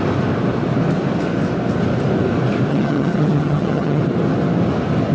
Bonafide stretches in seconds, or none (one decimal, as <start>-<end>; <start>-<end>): 0.0-2.7; 4.0-5.1